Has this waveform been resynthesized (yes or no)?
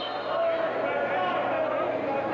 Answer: no